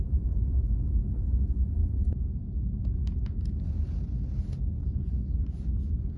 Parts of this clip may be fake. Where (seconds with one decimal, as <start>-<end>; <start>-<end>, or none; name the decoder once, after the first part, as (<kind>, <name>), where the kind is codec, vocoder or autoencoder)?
none